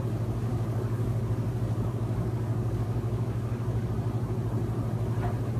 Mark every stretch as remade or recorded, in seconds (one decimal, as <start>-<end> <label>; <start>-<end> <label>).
0.0-0.5 recorded; 0.5-3.9 remade; 3.9-5.6 recorded

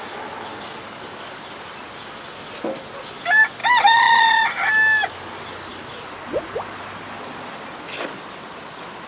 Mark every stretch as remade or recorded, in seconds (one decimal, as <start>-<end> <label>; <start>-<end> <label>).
0.0-0.5 recorded; 0.5-1.4 remade; 1.4-9.1 recorded

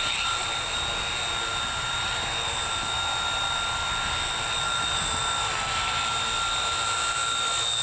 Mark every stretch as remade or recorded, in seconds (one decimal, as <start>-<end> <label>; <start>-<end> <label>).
0.0-7.8 recorded

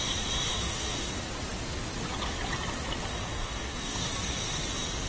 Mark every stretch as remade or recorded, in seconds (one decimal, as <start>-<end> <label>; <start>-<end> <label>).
0.0-0.5 recorded; 0.5-1.1 remade; 1.1-3.1 recorded; 3.1-4.1 remade; 4.1-5.1 recorded

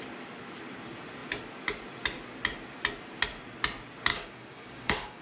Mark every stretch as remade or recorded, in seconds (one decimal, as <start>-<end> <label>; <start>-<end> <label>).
0.0-4.1 recorded; 4.1-5.2 remade

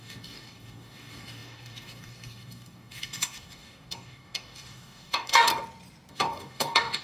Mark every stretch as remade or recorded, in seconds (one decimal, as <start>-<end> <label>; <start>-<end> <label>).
0.0-5.5 remade; 5.5-6.1 recorded; 6.1-7.0 remade

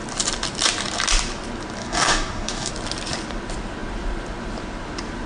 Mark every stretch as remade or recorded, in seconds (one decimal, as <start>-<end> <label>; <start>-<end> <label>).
0.0-1.8 recorded; 1.8-2.7 remade; 2.7-5.3 recorded

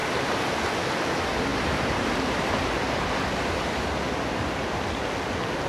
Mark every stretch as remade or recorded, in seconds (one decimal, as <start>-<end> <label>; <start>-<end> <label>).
0.0-5.7 recorded